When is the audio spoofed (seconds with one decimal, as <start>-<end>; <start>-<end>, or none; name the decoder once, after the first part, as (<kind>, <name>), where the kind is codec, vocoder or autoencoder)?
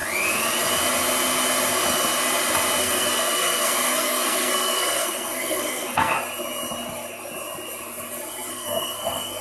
2.8-6.2 (codec, SNAC); 8.5-9.4